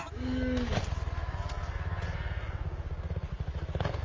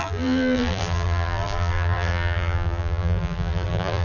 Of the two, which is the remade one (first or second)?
second